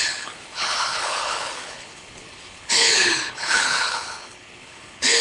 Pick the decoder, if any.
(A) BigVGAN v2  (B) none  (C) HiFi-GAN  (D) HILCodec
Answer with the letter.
D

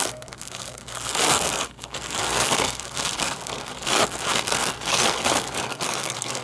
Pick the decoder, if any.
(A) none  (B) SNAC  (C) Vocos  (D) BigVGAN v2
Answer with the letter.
B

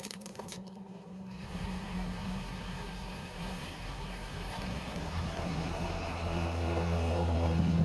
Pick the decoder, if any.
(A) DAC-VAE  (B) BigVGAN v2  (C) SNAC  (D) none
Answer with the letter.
C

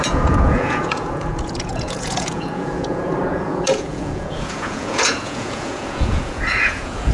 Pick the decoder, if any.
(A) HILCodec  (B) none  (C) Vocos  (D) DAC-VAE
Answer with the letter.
C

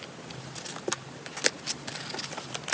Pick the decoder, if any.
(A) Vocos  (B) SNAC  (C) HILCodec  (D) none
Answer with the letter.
D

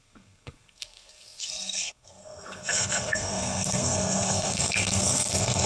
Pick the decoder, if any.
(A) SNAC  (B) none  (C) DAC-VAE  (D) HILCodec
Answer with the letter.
A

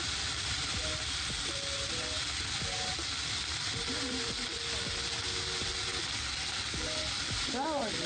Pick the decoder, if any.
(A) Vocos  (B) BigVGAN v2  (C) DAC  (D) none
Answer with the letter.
D